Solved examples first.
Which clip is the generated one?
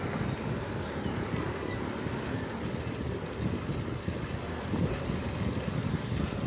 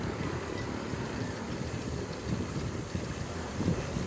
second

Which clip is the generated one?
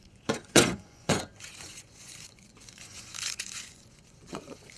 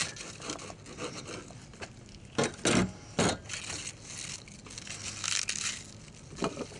first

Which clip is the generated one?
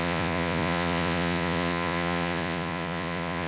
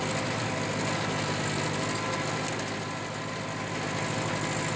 first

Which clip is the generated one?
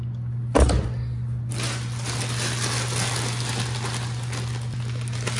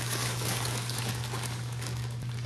second